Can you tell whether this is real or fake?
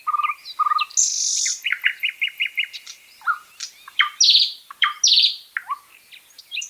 real